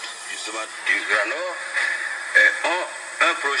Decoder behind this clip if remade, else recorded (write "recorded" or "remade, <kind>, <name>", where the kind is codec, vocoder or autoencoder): recorded